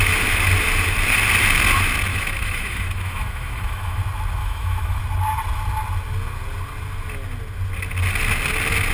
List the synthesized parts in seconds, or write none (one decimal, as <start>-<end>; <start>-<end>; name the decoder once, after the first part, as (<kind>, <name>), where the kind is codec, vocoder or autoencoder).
2.1-4.0 (autoencoder, DAC-VAE); 4.4-5.0